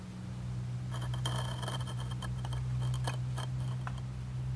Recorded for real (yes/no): yes